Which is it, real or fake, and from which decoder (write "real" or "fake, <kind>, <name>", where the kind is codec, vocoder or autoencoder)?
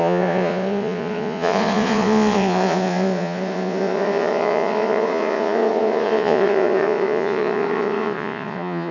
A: fake, vocoder, Vocos